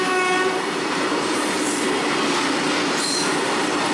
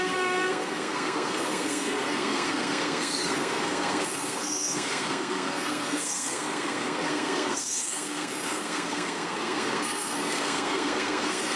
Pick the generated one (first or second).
second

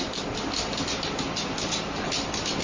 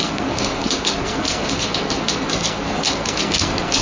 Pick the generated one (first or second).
second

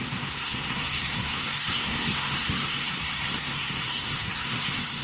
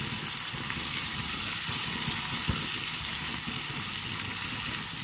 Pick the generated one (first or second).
first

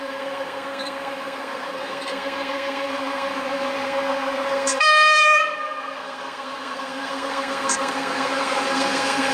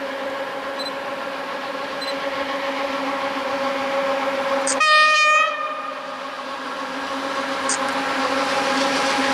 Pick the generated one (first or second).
first